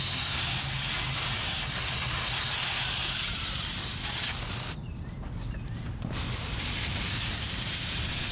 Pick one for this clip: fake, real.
real